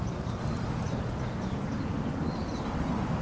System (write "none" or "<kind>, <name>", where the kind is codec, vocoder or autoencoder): none